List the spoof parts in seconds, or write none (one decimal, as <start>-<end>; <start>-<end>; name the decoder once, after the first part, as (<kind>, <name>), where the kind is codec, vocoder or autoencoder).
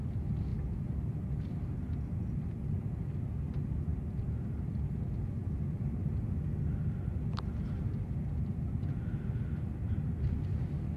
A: 3.9-4.9 (vocoder, BigVGAN v2); 5.4-6.1